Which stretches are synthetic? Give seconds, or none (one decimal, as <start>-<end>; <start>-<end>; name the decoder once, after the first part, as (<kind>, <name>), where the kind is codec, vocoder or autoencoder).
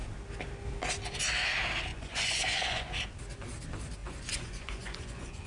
1.9-2.9 (vocoder, Vocos); 4.0-5.5